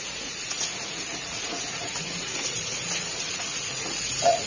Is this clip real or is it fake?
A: fake